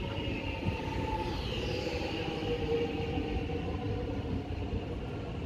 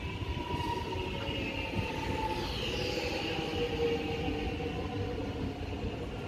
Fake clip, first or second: first